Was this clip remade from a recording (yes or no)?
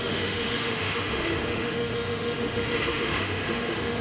yes